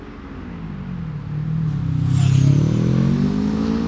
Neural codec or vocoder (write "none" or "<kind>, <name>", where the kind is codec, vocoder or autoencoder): none